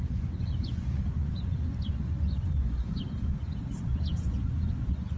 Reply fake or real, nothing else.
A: fake